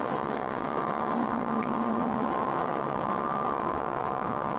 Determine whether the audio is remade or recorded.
remade